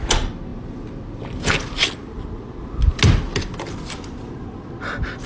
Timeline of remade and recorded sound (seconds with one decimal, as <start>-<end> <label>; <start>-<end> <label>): 0.0-5.3 recorded